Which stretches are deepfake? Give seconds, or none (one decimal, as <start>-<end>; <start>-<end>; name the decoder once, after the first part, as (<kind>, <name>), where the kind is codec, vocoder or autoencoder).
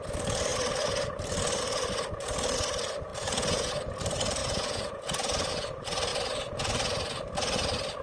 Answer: 3.1-3.7 (vocoder, Vocos); 4.4-5.5; 6.1-7.2